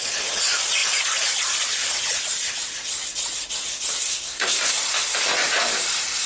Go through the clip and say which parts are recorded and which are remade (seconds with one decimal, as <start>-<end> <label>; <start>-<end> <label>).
0.0-4.1 recorded; 4.1-4.7 remade; 4.7-6.3 recorded